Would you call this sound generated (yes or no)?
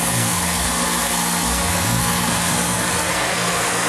yes